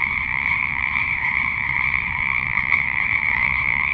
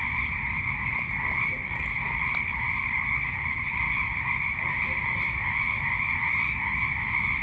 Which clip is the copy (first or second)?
first